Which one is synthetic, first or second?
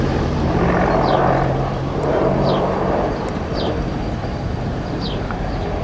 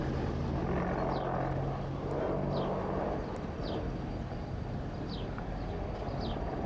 first